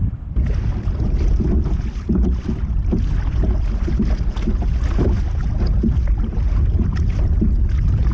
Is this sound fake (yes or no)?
no